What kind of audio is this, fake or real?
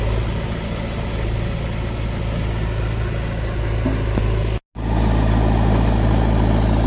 real